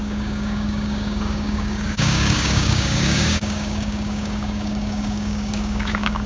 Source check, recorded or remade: remade